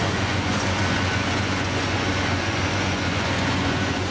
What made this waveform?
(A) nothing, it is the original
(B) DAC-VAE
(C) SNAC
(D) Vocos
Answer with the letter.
D